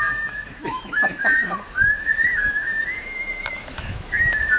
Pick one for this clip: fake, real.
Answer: fake